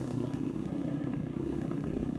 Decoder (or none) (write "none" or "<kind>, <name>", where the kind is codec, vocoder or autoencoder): codec, SNAC